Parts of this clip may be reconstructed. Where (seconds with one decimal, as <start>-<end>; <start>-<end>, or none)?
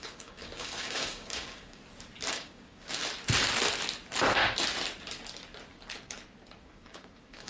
0.0-1.8; 2.3-3.0; 6.6-7.5